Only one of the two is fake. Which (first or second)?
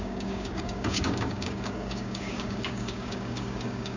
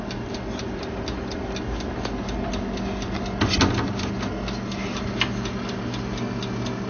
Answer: first